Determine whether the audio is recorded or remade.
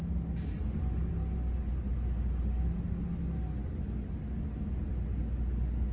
recorded